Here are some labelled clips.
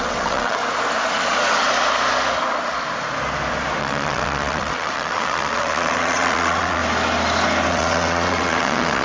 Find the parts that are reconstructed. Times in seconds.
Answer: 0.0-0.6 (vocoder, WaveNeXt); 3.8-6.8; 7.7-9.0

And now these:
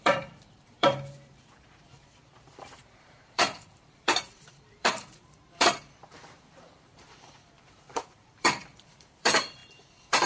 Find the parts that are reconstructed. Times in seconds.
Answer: 0.0-10.3 (vocoder, BigVGAN v2)

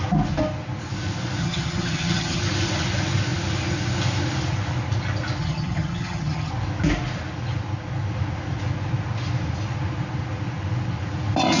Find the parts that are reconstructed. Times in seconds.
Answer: 1.4-2.4 (vocoder, HiFi-GAN); 5.4-6.5

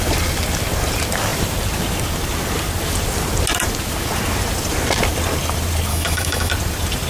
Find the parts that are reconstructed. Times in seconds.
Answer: 5.9-6.5 (autoencoder, DAC-VAE)

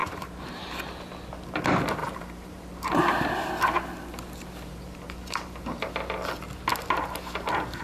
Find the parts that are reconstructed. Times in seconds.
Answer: 0.0-0.7 (vocoder, BigVGAN v2); 2.0-3.2; 4.7-5.9

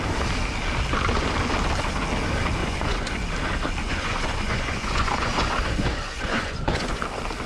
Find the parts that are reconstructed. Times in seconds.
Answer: 2.6-3.3 (vocoder, Vocos); 3.8-7.0